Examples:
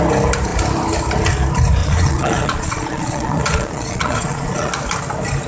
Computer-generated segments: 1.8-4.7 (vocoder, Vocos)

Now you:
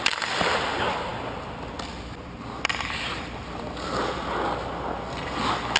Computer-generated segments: none

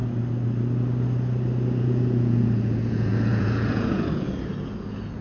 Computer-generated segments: 1.8-5.2 (vocoder, Vocos)

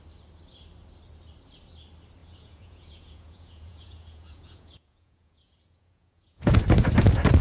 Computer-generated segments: 2.2-6.6 (vocoder, Vocos)

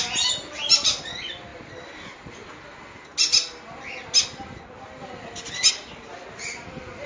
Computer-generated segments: none